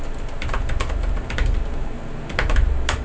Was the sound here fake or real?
real